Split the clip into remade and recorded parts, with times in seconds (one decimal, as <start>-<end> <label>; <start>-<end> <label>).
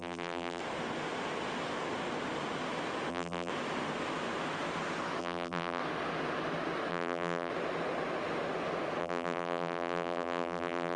0.0-0.6 remade; 0.6-3.1 recorded; 3.1-3.5 remade; 3.5-5.2 recorded; 5.2-5.8 remade; 5.8-6.9 recorded; 6.9-7.5 remade; 7.5-9.0 recorded; 9.0-11.0 remade